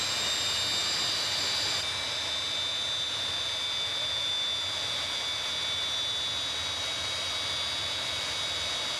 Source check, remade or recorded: recorded